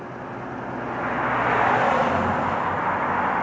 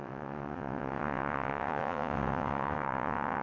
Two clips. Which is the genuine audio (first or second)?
first